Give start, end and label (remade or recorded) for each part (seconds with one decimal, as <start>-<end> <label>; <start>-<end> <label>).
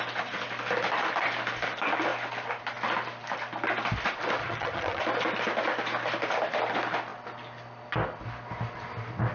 0.0-4.4 recorded; 4.4-5.0 remade; 5.0-9.3 recorded